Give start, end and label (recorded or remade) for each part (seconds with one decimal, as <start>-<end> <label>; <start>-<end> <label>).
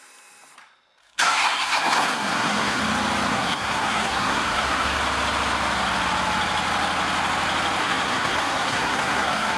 0.0-1.0 recorded; 1.0-2.8 remade; 2.8-3.3 recorded; 3.3-5.0 remade; 5.0-7.8 recorded; 7.8-9.6 remade